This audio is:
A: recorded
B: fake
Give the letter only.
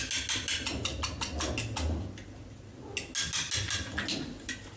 A